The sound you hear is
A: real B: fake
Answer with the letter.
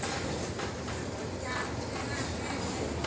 A